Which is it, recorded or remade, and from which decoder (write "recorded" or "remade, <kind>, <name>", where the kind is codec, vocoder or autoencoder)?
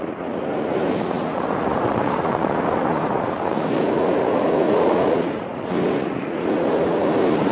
remade, vocoder, Vocos